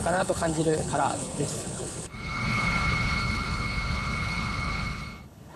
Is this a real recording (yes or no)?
no